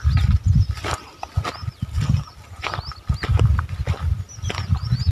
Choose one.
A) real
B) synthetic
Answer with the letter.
A